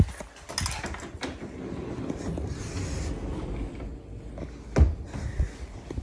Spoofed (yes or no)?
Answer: no